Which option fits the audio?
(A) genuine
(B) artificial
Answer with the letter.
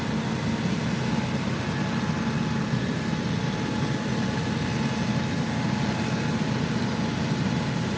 A